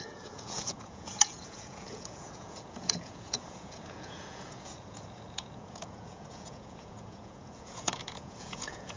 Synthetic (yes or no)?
yes